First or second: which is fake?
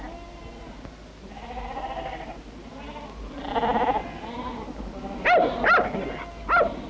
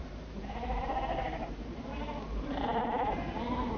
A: second